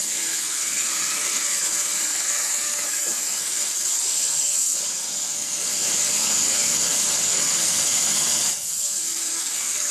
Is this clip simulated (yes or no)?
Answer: yes